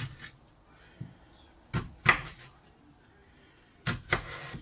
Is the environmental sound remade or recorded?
recorded